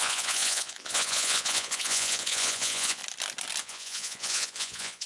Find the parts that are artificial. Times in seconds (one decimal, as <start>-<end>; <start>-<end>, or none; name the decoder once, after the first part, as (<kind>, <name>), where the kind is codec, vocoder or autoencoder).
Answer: 0.0-3.0 (vocoder, Vocos); 3.6-5.1